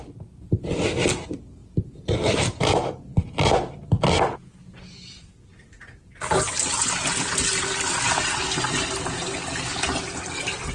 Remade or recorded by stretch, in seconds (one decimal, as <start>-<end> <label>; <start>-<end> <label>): 0.0-1.6 recorded; 1.6-3.0 remade; 3.0-10.7 recorded